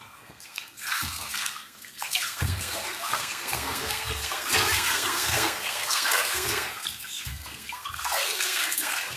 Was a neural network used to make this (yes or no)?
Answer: yes